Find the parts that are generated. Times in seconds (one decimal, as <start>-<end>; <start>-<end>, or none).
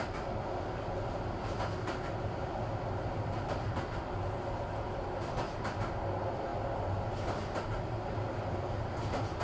none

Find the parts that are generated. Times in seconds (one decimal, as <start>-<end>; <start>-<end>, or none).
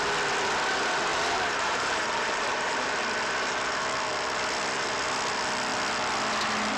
1.1-3.0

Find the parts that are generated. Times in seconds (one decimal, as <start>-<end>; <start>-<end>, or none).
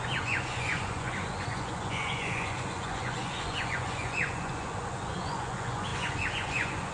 0.0-6.9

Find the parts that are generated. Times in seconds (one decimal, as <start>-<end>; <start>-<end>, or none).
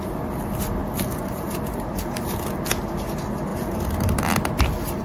none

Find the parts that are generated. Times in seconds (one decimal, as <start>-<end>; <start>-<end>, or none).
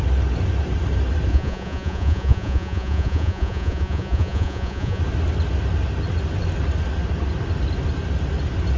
1.3-5.0